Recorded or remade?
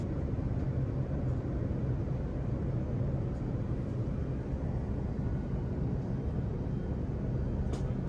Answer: recorded